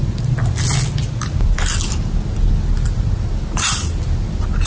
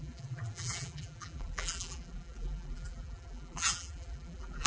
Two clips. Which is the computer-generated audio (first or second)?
second